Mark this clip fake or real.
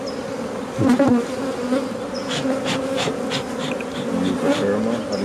real